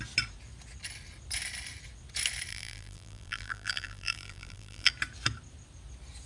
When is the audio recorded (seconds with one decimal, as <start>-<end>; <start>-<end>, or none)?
0.0-2.5; 4.9-6.3